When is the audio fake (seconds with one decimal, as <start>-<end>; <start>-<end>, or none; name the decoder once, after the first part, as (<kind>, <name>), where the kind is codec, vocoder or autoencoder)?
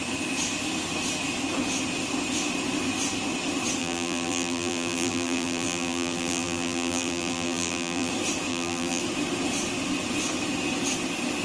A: 3.8-8.1 (vocoder, BigVGAN v2); 8.5-9.0